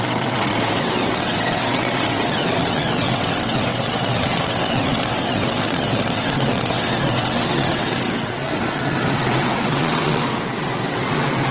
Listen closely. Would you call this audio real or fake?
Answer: fake